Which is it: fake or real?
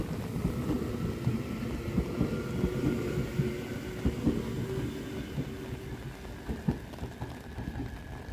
real